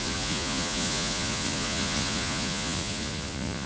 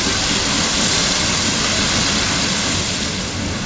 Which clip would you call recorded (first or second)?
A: second